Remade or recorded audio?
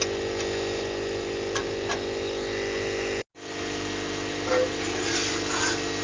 recorded